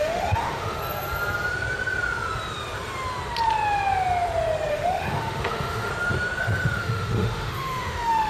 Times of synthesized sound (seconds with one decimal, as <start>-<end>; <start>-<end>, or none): 0.0-0.8; 4.7-5.9; 6.4-8.3